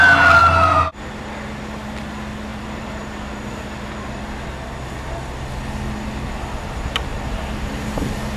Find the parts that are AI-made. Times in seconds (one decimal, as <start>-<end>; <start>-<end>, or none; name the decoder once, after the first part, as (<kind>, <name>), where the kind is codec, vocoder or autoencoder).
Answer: 0.4-1.2 (vocoder, BigVGAN v2); 2.5-4.2